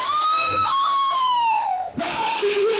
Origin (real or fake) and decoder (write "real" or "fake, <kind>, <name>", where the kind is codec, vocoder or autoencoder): fake, autoencoder, DAC-VAE